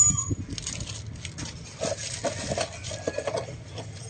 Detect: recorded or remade recorded